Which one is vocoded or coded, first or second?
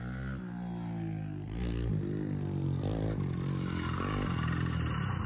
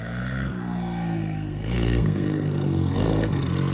second